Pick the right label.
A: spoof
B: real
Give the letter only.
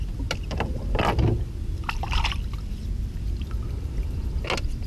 B